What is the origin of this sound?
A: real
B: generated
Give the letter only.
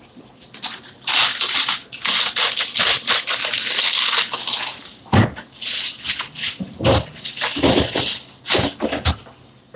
A